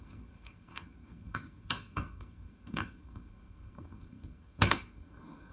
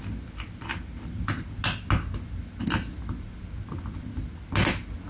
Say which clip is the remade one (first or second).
first